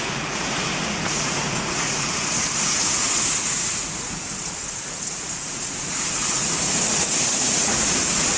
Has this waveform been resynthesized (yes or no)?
yes